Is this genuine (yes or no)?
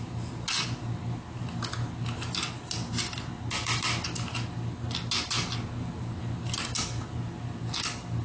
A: yes